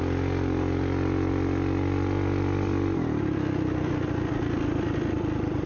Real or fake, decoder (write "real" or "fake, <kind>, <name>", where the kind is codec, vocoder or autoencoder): real